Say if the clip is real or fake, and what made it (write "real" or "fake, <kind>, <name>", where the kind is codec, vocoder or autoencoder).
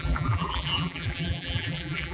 fake, vocoder, BigVGAN v2